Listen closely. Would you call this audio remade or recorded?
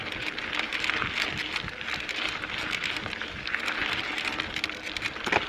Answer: recorded